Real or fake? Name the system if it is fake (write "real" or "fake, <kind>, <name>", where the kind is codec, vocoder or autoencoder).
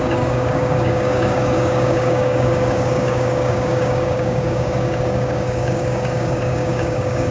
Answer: fake, codec, DAC